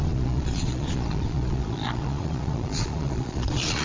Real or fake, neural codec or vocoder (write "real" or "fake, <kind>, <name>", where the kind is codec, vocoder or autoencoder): fake, vocoder, Vocos